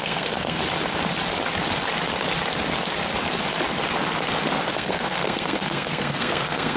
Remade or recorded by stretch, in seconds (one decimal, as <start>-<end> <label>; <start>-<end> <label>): 0.0-0.6 remade; 0.6-4.7 recorded; 4.7-6.8 remade